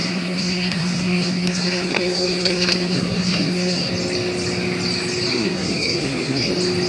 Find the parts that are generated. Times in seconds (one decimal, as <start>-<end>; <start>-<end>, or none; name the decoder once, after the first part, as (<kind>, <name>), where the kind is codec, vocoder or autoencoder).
0.0-3.9 (codec, SNAC); 5.3-6.5